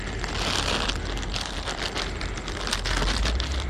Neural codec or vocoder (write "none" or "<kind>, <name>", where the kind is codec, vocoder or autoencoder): none